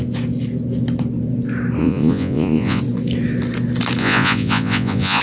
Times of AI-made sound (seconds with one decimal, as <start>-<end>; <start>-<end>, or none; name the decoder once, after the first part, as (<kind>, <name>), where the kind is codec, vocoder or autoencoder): 1.8-2.8 (vocoder, Vocos); 4.0-5.2